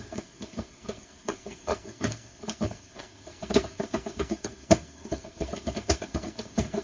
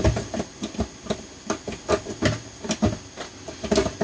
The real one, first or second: second